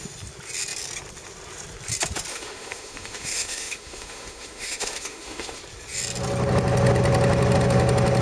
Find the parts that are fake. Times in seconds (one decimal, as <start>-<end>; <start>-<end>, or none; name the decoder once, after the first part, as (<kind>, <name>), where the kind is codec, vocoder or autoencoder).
2.3-5.6 (autoencoder, DAC-VAE)